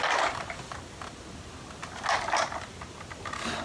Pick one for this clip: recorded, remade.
recorded